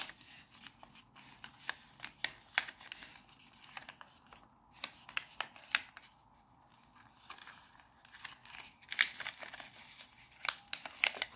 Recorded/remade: recorded